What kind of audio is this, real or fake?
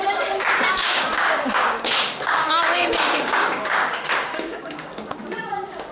fake